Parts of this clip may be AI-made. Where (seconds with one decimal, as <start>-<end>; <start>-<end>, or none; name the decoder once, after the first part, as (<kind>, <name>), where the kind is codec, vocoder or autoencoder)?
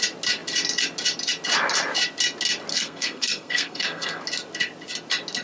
2.7-4.2 (codec, SNAC)